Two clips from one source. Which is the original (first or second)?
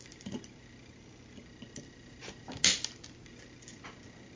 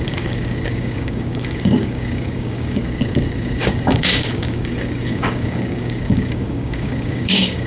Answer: first